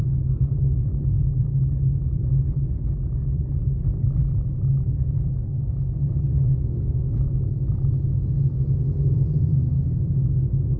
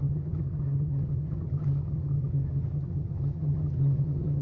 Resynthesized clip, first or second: second